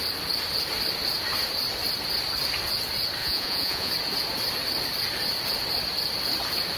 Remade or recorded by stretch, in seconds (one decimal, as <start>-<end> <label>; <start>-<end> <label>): 0.0-3.2 recorded; 3.2-3.9 remade; 3.9-6.8 recorded